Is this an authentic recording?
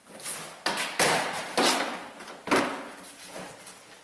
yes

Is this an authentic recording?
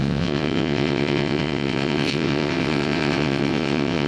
no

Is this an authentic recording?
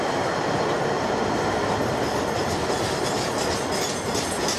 yes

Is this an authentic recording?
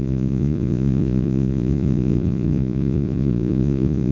no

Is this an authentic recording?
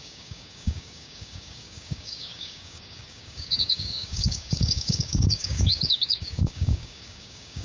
no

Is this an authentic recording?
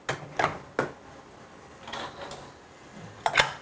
yes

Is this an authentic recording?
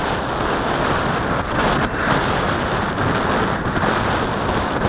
yes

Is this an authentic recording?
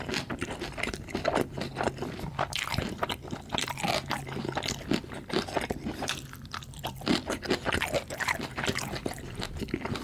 no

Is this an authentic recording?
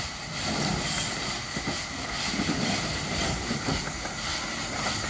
yes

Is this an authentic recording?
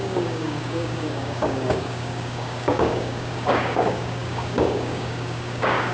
no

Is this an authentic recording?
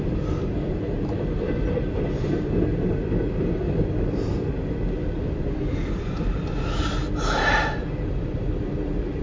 yes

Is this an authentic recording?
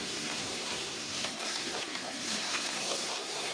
no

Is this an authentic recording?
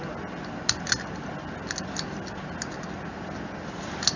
yes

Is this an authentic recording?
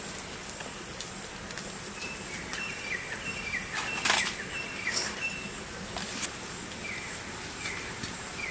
yes